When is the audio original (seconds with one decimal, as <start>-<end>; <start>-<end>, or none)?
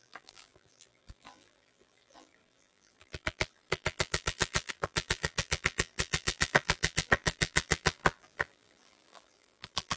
none